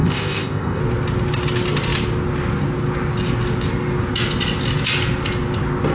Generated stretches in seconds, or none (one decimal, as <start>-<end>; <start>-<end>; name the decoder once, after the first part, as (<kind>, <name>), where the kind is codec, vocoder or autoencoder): 0.0-0.8 (codec, ZipCodec)